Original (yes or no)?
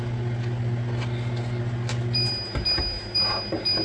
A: yes